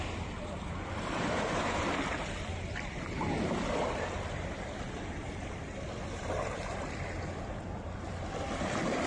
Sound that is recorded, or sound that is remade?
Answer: remade